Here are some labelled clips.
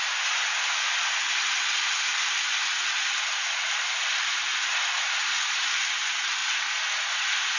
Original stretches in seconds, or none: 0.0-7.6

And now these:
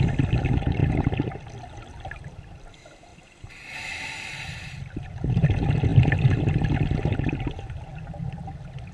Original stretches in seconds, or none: 0.0-8.9

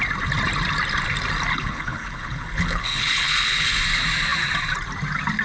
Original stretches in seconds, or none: 0.0-1.5; 3.8-5.4

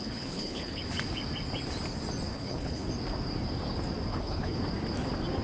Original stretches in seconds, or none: 0.8-2.3; 2.9-4.1; 4.6-5.4

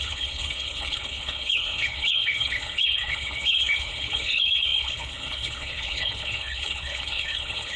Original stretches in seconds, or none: none

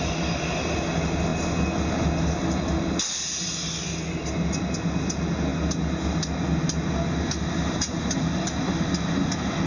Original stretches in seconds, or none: 0.0-9.7

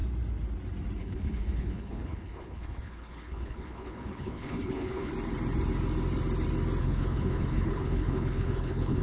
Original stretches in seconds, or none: 0.0-1.0; 5.1-6.8